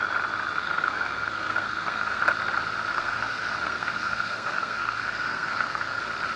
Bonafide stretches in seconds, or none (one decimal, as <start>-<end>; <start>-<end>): 0.0-0.6; 2.2-2.9; 6.0-6.4